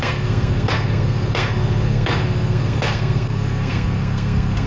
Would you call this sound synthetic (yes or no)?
yes